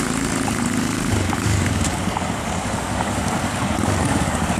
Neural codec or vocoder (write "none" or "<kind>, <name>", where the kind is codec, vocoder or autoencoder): codec, DAC